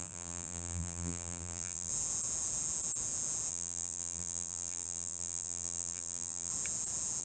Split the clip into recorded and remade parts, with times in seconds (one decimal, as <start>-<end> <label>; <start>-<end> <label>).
0.0-1.9 remade; 1.9-3.5 recorded; 3.5-6.5 remade; 6.5-7.2 recorded